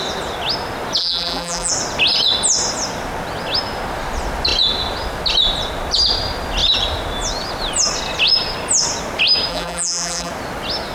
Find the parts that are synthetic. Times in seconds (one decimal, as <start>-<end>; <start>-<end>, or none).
1.0-1.7; 9.5-10.3